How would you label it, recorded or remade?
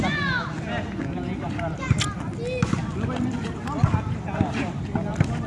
recorded